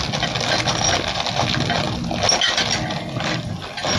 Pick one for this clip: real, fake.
real